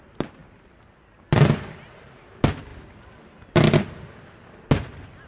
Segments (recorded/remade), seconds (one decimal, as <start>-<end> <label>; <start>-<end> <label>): 0.0-0.4 recorded; 0.4-1.7 remade; 1.7-2.7 recorded; 2.7-4.1 remade; 4.1-5.3 recorded